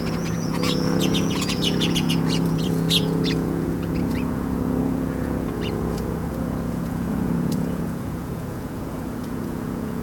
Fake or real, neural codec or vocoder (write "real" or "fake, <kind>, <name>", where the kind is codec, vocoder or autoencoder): fake, vocoder, Vocos